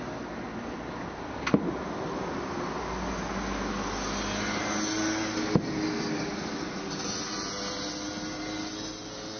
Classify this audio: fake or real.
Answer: real